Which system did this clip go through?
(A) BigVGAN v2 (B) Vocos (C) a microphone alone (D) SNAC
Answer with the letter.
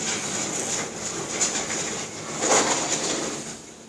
C